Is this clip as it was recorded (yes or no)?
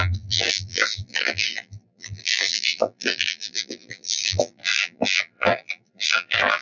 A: no